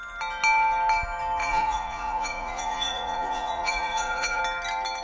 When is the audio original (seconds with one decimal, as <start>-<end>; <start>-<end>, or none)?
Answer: 0.0-1.4; 4.4-5.0